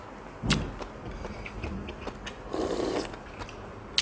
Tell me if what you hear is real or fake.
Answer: real